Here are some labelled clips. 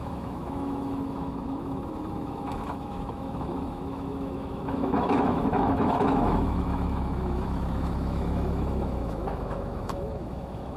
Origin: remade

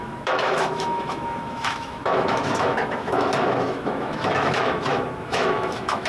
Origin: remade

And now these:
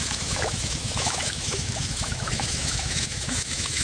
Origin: remade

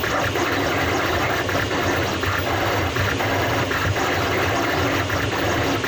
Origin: recorded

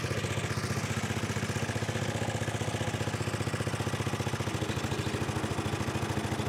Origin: recorded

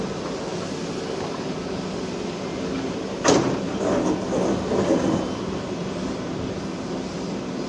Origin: recorded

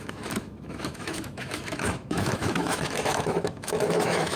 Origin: remade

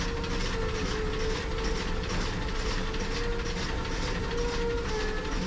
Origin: recorded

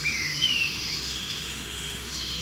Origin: remade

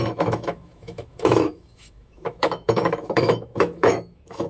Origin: remade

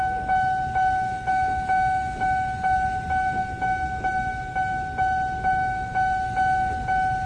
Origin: recorded